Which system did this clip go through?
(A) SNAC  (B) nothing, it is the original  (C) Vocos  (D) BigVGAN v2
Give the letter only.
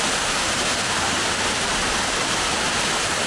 B